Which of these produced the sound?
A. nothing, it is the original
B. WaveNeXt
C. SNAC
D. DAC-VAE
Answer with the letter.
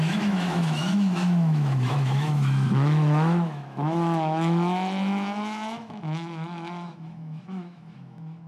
D